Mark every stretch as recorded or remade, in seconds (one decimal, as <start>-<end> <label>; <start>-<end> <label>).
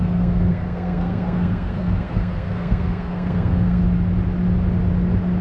0.0-3.8 remade; 3.8-5.4 recorded